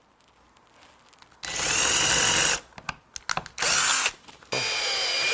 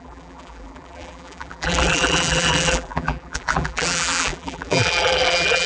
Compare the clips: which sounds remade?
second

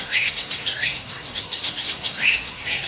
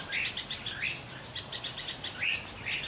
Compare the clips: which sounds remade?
first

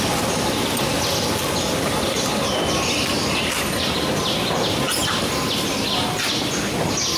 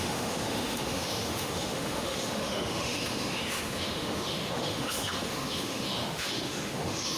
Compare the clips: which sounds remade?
second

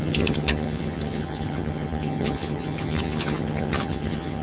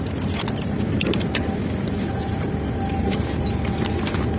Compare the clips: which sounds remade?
first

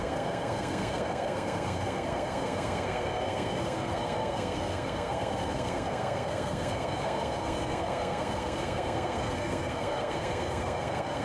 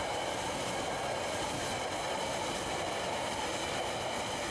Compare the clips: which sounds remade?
first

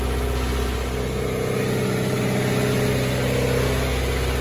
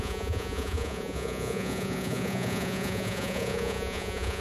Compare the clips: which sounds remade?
second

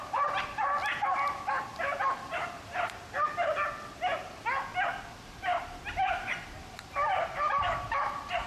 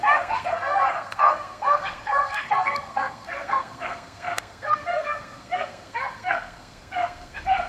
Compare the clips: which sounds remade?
second